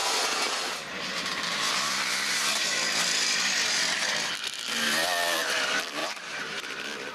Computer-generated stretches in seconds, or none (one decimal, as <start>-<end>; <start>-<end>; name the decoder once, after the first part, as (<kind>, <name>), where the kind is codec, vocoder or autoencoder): 0.0-4.3 (vocoder, BigVGAN v2); 6.0-6.6